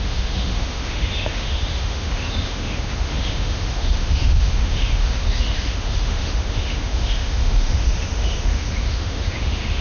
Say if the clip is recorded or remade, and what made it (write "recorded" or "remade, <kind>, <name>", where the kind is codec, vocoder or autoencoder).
remade, autoencoder, DAC-VAE